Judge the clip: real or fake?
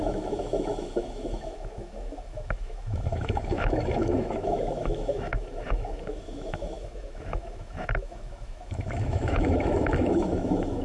fake